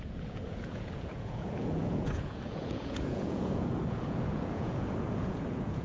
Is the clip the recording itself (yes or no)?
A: no